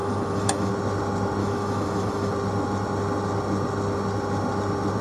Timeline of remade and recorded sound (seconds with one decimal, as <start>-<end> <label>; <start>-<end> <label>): 0.0-0.7 remade; 0.7-1.4 recorded; 1.4-2.3 remade; 2.3-5.0 recorded